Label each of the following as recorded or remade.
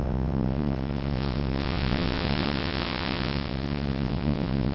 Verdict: remade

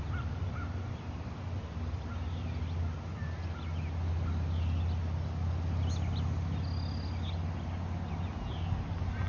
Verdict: recorded